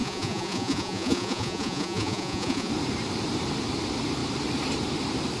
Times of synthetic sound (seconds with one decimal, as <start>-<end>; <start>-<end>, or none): 0.0-2.7